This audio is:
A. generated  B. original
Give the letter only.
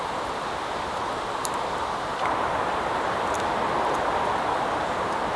A